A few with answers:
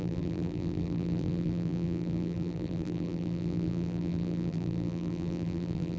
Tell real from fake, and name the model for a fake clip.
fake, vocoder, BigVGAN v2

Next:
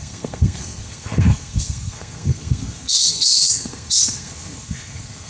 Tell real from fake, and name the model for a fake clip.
fake, codec, SNAC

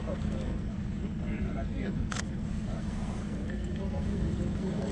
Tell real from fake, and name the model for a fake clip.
fake, codec, SNAC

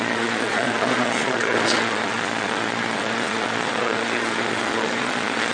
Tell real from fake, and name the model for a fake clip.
fake, vocoder, Vocos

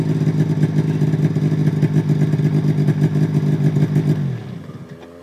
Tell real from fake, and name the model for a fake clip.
real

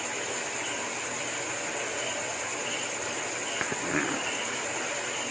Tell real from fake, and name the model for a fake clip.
real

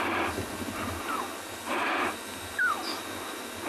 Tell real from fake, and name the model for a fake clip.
real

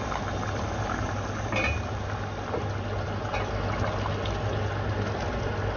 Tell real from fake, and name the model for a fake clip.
real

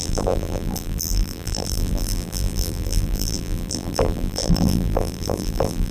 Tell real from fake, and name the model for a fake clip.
fake, vocoder, BigVGAN v2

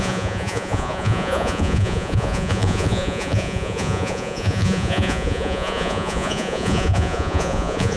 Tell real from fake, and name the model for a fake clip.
fake, vocoder, Vocos